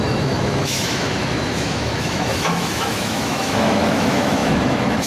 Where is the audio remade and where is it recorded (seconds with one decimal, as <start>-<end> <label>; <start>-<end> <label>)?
0.0-5.1 remade